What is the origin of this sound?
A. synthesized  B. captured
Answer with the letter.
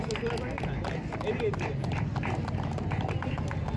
B